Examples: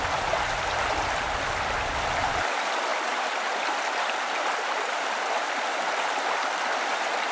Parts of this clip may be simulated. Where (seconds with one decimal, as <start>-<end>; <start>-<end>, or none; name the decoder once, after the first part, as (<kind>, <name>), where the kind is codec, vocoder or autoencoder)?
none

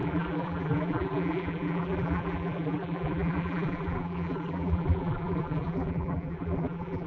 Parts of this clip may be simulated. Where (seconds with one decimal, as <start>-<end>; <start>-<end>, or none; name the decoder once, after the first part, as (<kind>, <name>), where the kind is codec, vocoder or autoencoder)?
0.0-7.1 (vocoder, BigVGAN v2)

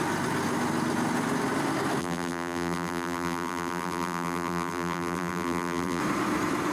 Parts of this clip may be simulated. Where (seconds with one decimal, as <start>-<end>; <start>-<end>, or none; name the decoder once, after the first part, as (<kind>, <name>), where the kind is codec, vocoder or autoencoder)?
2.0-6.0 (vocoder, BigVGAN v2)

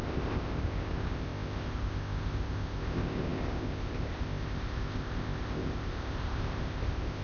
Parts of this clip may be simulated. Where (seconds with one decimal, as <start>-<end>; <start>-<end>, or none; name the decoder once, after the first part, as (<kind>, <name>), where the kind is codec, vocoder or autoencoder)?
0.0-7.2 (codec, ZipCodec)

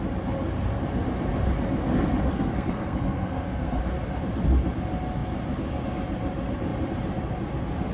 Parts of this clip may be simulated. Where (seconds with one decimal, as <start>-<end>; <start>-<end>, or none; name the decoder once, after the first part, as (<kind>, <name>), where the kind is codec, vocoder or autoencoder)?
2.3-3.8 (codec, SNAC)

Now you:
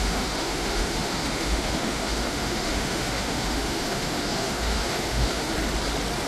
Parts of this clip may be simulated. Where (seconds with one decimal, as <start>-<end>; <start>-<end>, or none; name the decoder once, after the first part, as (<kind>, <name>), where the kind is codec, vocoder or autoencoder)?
0.0-5.5 (autoencoder, DAC-VAE)